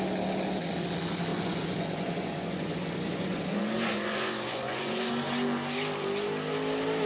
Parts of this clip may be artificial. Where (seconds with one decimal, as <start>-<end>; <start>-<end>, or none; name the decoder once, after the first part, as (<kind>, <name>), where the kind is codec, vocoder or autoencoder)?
1.3-5.1 (vocoder, Vocos)